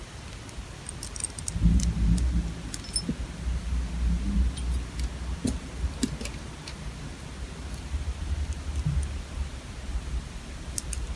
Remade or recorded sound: recorded